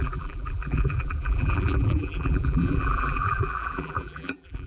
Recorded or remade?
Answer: remade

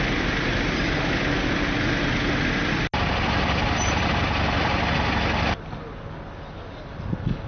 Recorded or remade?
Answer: recorded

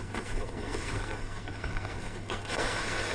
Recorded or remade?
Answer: remade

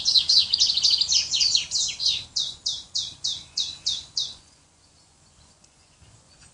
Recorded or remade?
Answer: remade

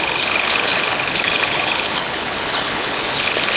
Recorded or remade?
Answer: remade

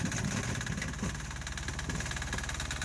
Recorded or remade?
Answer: recorded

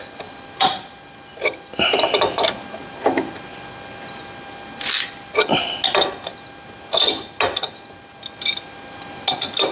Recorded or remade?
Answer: recorded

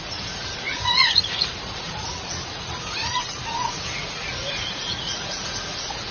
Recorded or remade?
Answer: remade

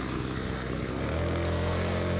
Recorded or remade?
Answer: remade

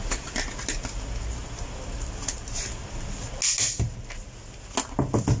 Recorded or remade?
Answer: recorded